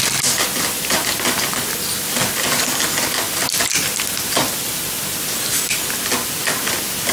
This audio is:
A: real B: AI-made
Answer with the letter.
A